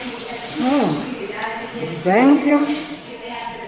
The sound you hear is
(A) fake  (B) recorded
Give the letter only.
A